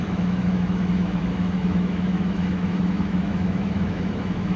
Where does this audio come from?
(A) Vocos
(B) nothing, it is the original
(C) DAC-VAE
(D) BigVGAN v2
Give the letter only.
C